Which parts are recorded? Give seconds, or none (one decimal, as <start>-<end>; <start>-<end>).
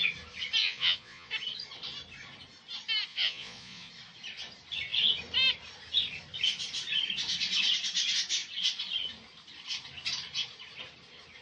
0.0-0.6; 1.3-3.1; 3.9-11.4